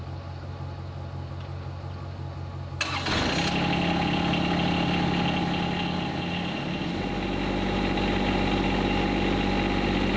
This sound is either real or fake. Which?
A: real